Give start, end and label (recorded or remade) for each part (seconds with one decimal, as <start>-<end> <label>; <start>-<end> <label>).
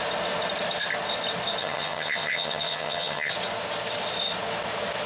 0.0-1.6 recorded; 1.6-3.3 remade; 3.3-5.1 recorded